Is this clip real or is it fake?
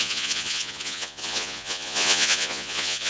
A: fake